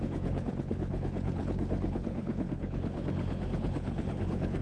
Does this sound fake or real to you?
fake